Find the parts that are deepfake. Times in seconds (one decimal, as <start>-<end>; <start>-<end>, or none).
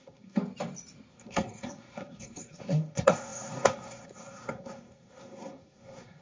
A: 0.0-0.4; 1.1-6.2